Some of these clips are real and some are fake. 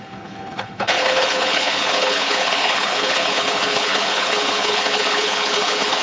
fake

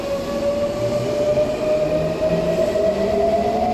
real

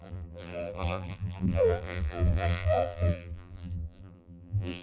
fake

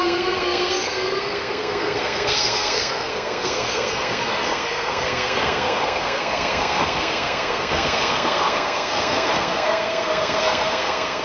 fake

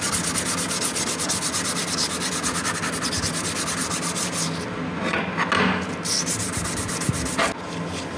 real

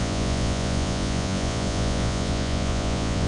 fake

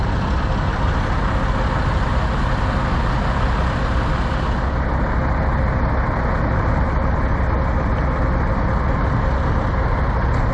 real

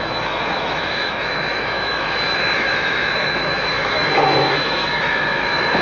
fake